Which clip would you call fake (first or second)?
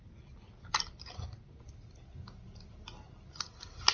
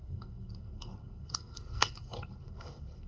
second